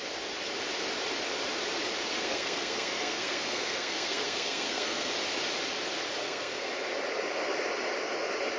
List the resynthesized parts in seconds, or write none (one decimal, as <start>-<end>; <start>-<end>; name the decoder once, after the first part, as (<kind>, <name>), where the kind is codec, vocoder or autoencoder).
2.1-5.1 (codec, SNAC); 6.2-6.7